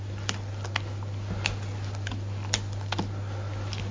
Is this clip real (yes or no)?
yes